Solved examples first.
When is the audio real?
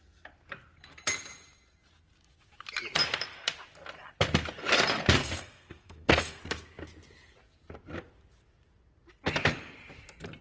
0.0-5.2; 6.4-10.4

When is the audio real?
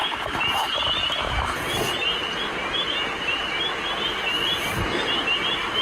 0.0-5.8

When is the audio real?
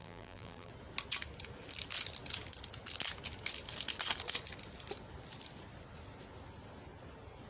0.7-7.5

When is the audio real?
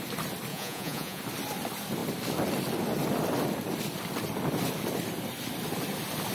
0.0-0.5; 1.2-6.3